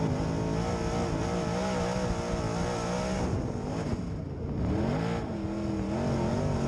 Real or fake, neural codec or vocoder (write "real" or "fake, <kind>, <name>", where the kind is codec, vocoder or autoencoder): real